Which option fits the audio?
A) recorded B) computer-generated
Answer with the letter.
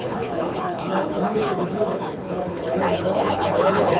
B